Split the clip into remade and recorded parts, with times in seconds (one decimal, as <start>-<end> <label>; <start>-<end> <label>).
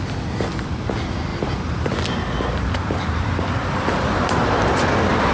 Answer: 0.0-1.3 recorded; 1.3-4.5 remade; 4.5-5.3 recorded